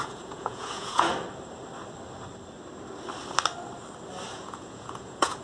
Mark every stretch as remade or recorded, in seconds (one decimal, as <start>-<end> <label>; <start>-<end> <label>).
0.0-1.1 remade; 1.1-4.3 recorded; 4.3-5.4 remade